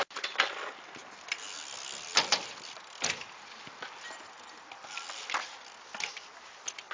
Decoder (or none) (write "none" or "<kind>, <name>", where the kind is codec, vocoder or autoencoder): none